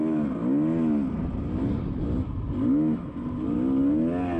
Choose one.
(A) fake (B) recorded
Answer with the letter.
B